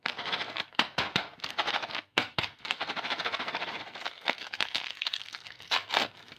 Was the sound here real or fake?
fake